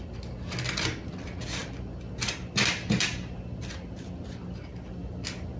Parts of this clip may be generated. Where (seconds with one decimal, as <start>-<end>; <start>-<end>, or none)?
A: none

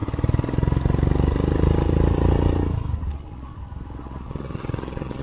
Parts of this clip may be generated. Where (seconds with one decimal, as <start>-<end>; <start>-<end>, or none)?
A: 3.1-3.5; 4.0-5.2

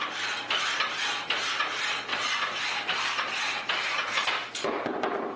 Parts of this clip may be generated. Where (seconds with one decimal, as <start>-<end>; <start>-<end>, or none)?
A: none

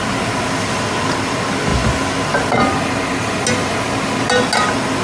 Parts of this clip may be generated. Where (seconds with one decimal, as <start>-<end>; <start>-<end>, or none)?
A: none

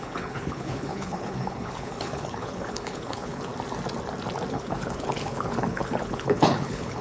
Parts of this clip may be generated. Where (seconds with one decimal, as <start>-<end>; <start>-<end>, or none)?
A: 0.0-3.5; 4.5-7.0

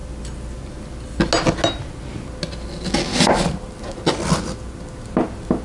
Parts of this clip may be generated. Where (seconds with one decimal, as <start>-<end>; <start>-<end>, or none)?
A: none

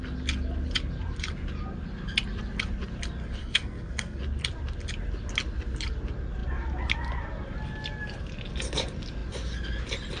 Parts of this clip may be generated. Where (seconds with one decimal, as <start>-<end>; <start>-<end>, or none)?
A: 3.4-4.2

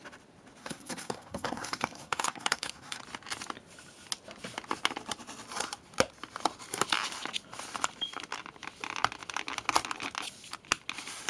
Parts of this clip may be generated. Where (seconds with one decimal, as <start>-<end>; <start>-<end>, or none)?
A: 0.6-3.0